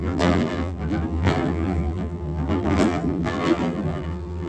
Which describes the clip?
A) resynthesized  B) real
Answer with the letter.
A